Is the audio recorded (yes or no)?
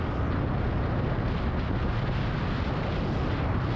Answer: yes